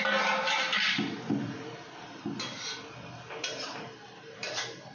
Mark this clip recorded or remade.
recorded